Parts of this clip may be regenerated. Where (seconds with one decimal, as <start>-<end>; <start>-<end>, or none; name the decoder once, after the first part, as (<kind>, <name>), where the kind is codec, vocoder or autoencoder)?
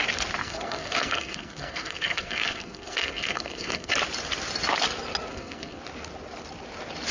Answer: 0.4-3.9 (codec, SNAC); 5.3-5.8